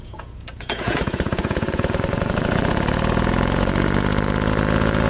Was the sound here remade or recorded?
remade